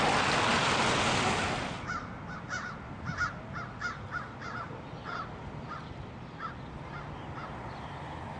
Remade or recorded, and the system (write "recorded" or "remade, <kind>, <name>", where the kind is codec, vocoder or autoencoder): recorded